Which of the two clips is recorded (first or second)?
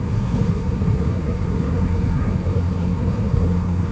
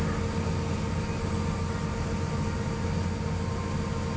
second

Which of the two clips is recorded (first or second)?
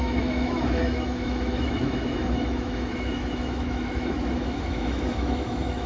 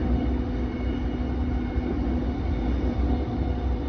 second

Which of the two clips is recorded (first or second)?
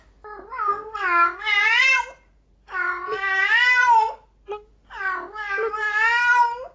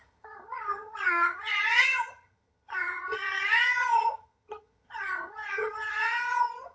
first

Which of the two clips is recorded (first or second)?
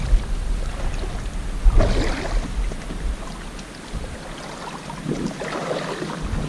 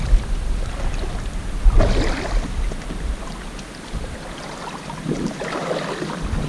first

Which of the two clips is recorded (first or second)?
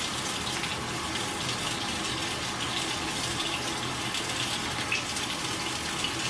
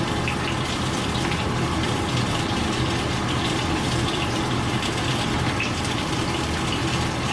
first